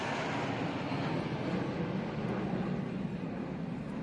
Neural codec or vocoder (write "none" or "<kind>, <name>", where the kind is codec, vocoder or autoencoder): none